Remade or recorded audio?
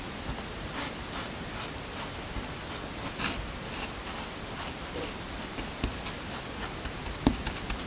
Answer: recorded